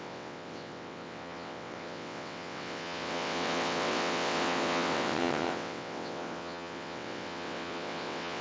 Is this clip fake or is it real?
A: fake